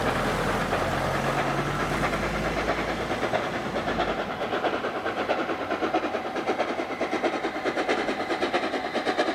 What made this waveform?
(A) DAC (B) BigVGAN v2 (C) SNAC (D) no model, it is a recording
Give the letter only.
D